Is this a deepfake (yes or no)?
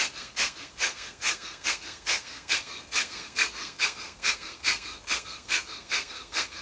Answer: yes